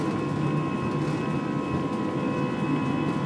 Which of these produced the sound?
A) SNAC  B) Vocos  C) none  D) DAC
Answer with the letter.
C